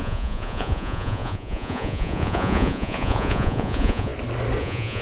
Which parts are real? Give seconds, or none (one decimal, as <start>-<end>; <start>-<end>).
4.1-4.6